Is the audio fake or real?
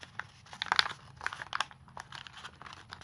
real